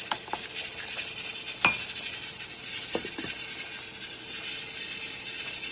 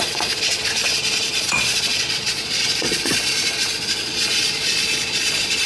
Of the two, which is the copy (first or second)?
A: second